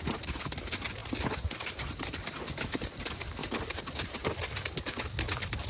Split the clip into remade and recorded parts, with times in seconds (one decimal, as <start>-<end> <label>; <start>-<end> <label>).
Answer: 0.0-1.0 recorded; 1.0-2.7 remade; 2.7-3.4 recorded; 3.4-4.3 remade; 4.3-5.7 recorded